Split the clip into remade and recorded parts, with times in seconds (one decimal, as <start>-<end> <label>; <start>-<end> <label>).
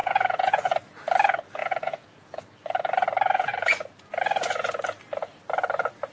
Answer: 0.0-0.6 remade; 0.6-1.6 recorded; 1.6-2.4 remade; 2.4-6.1 recorded